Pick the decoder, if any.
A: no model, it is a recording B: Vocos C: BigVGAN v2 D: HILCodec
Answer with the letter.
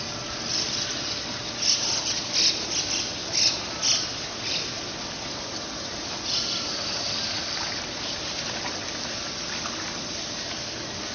A